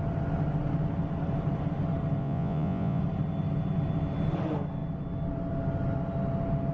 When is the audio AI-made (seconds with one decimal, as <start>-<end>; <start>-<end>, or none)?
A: 2.2-3.0